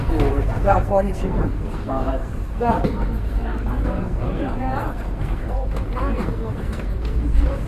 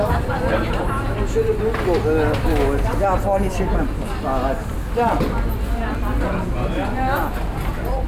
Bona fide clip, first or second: second